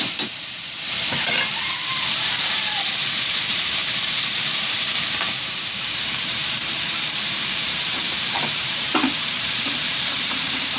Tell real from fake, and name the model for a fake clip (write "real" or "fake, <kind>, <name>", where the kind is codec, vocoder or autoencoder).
fake, vocoder, BigVGAN v2